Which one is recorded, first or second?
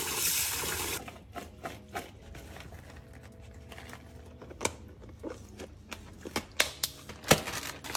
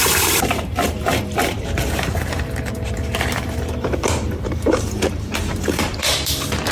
first